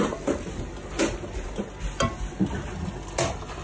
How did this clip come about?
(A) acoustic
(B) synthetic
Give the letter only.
A